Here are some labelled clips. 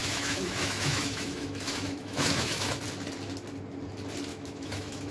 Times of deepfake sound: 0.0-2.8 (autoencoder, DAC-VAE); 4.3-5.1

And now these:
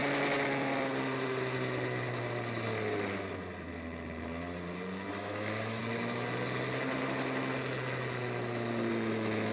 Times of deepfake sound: 5.1-5.8 (autoencoder, DAC-VAE); 8.9-9.5

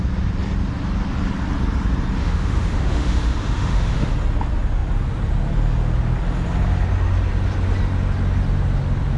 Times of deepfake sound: 2.2-4.1 (autoencoder, DAC-VAE)

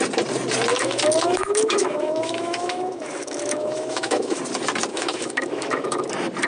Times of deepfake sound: 0.7-4.4 (autoencoder, DAC-VAE); 4.9-6.1

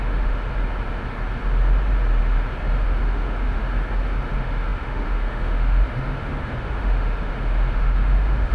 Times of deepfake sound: 0.0-0.5 (autoencoder, DAC-VAE); 2.6-3.6; 4.3-8.5

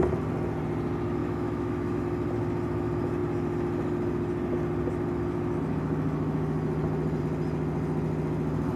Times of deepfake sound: 1.2-2.0 (autoencoder, DAC-VAE)